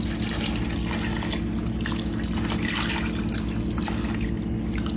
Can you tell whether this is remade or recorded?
recorded